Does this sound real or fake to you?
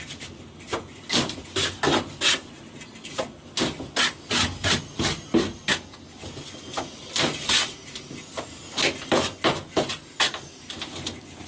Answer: real